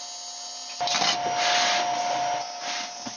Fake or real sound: real